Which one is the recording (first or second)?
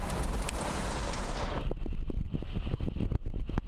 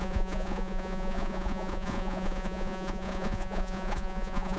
first